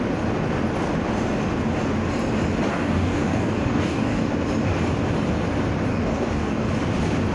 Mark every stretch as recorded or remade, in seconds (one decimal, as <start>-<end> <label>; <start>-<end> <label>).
0.0-2.7 recorded; 2.7-4.3 remade; 4.3-5.9 recorded; 5.9-6.7 remade; 6.7-7.3 recorded